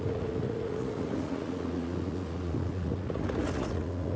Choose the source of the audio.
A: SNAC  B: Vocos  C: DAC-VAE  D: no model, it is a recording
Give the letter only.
B